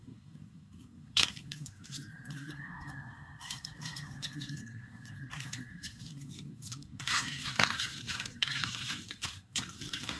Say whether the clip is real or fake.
fake